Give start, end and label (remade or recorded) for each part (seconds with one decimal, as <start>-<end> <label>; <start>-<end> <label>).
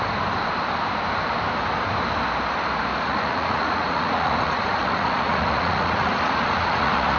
0.0-2.9 recorded; 2.9-7.2 remade